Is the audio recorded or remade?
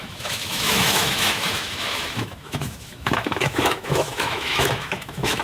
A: remade